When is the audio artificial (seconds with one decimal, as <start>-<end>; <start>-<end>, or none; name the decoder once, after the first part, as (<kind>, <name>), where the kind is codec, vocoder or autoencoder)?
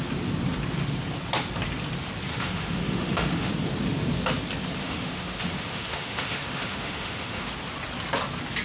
2.3-3.5 (autoencoder, DAC-VAE); 4.8-7.5